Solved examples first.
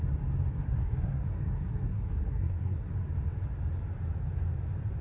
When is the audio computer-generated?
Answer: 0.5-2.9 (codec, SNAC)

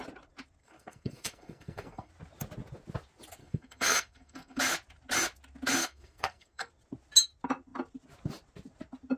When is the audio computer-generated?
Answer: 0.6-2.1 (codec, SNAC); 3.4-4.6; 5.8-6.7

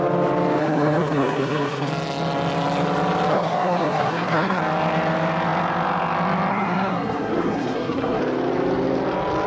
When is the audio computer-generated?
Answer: 0.6-1.9 (codec, SNAC); 3.3-4.6; 6.5-8.2

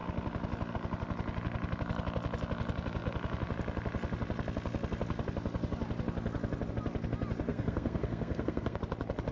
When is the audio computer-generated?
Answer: 7.5-8.8 (codec, SNAC)